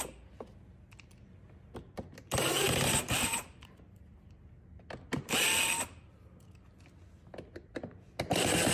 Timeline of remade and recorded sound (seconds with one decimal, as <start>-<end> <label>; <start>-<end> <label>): 0.0-8.7 recorded